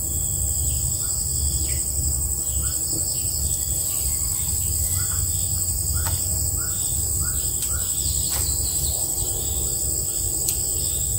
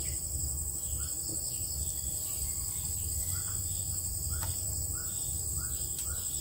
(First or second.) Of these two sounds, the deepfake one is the second